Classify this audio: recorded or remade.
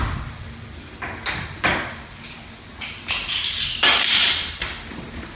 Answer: recorded